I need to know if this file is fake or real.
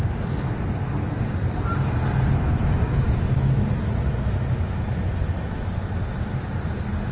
real